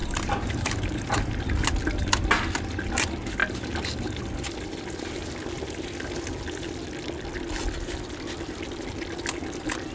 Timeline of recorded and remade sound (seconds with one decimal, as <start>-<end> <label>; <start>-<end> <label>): 0.0-1.2 remade; 1.2-9.9 recorded